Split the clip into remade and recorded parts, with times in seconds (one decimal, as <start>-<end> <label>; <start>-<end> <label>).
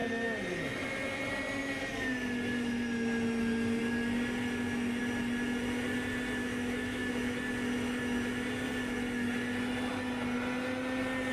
0.0-6.4 recorded; 6.4-7.1 remade; 7.1-11.3 recorded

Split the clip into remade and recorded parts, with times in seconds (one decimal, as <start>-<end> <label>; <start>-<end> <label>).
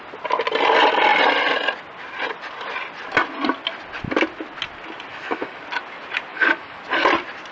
0.0-5.1 recorded; 5.1-5.6 remade; 5.6-6.3 recorded; 6.3-6.8 remade; 6.8-7.5 recorded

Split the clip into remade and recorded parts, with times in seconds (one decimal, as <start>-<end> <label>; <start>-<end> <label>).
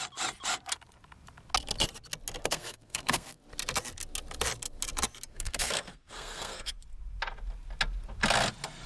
0.0-2.4 recorded; 2.4-3.4 remade; 3.4-5.3 recorded; 5.3-6.7 remade; 6.7-8.9 recorded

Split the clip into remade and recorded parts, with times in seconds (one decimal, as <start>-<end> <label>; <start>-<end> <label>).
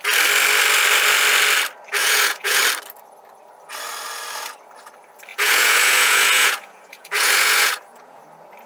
0.0-2.0 recorded; 2.0-2.6 remade; 2.6-5.3 recorded; 5.3-8.2 remade; 8.2-8.7 recorded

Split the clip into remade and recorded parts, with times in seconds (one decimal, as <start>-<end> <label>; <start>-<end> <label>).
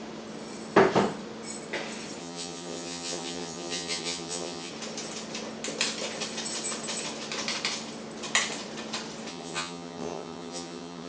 0.0-2.2 recorded; 2.2-4.7 remade; 4.7-9.3 recorded; 9.3-11.1 remade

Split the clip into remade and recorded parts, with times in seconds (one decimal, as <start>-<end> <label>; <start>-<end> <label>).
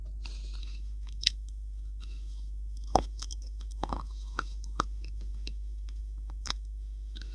0.0-0.6 recorded; 0.6-7.3 remade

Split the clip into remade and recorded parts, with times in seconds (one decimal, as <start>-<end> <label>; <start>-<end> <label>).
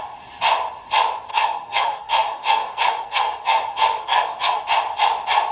0.0-1.3 recorded; 1.3-4.6 remade; 4.6-5.5 recorded